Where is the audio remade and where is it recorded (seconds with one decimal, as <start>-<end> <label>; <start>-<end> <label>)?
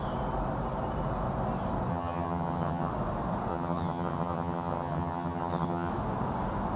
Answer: 0.0-1.9 recorded; 1.9-2.9 remade; 2.9-3.5 recorded; 3.5-5.9 remade; 5.9-6.8 recorded